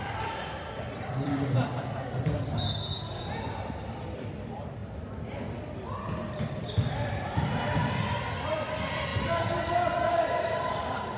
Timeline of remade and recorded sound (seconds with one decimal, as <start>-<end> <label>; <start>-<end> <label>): 0.0-4.8 remade; 4.8-6.3 recorded; 6.3-9.1 remade; 9.1-10.1 recorded; 10.1-11.2 remade